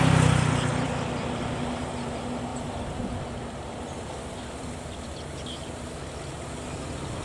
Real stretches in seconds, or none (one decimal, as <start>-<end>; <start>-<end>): 0.0-0.7; 1.4-2.5; 5.3-7.2